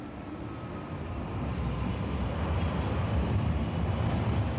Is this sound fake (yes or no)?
no